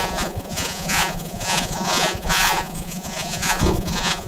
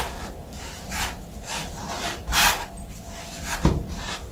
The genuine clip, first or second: second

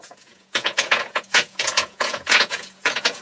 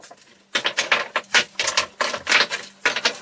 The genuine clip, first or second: second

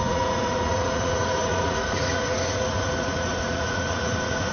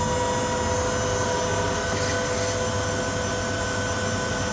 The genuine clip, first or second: second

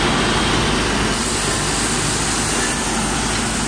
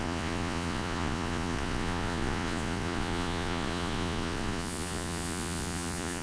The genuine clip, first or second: first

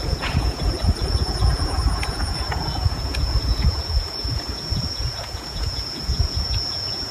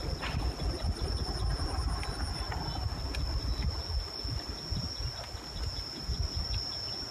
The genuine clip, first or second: second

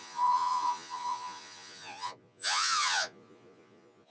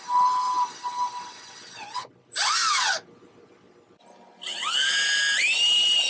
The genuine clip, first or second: second